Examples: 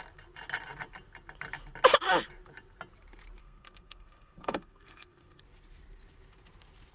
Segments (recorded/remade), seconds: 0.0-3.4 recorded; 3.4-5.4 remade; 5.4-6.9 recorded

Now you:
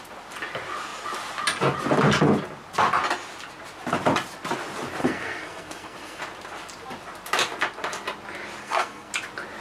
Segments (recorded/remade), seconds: 0.0-5.0 recorded; 5.0-6.2 remade; 6.2-8.6 recorded; 8.6-9.1 remade; 9.1-9.6 recorded

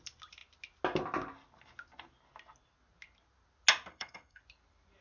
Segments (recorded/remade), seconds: 0.0-3.9 recorded; 3.9-4.4 remade; 4.4-5.0 recorded

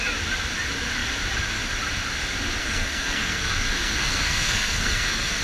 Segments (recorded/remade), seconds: 0.0-2.6 recorded; 2.6-5.4 remade

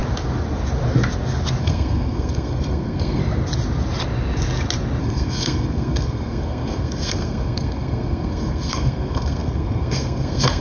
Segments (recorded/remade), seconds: 0.0-1.6 recorded; 1.6-3.2 remade; 3.2-5.0 recorded; 5.0-10.6 remade

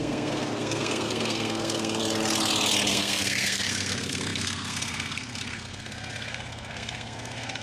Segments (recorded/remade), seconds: 0.0-2.0 remade; 2.0-2.9 recorded; 2.9-7.6 remade